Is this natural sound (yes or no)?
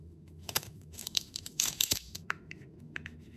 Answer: no